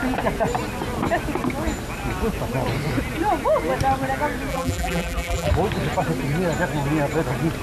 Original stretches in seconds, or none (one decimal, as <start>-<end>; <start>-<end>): 0.0-4.5; 5.5-7.6